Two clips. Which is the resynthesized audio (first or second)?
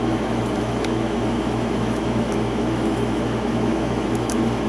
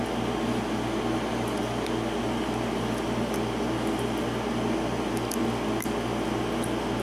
first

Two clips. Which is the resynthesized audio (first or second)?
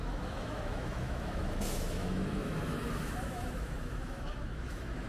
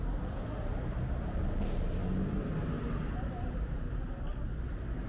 first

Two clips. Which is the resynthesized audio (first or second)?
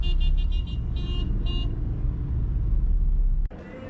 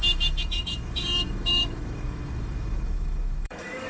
second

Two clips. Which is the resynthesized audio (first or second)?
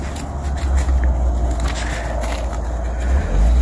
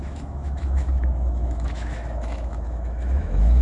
second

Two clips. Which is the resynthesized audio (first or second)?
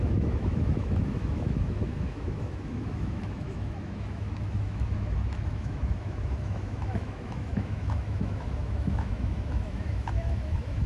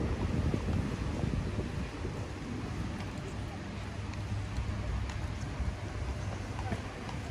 first